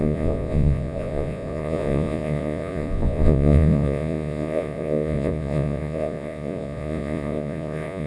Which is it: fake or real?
fake